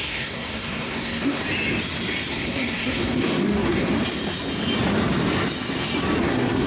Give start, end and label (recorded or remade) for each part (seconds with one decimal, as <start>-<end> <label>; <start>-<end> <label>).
0.0-1.4 remade; 1.4-2.3 recorded; 2.3-3.9 remade; 3.9-6.2 recorded; 6.2-6.7 remade